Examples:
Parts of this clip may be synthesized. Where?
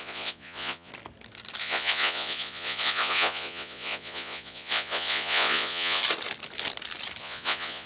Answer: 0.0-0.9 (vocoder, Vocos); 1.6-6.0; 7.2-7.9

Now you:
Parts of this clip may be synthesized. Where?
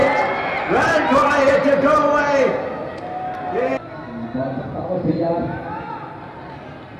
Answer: none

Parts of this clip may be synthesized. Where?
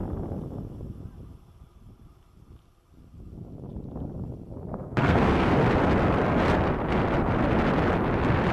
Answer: 4.7-5.5 (codec, SNAC)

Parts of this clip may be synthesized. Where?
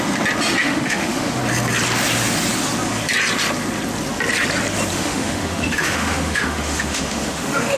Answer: 0.6-1.4 (autoencoder, DAC-VAE); 4.9-7.8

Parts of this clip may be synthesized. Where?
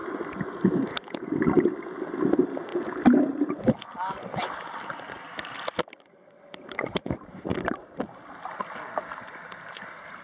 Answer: none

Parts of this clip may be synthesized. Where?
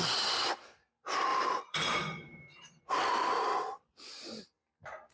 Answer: 1.3-2.8 (vocoder, BigVGAN v2)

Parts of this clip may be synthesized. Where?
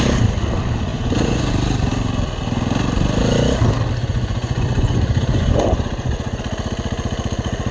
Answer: 0.9-1.5 (vocoder, Vocos); 4.0-6.4